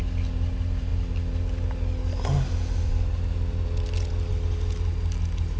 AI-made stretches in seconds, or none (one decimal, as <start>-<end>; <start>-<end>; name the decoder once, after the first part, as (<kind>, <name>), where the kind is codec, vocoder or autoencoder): none